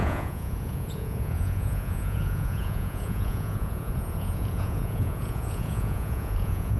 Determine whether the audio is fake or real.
fake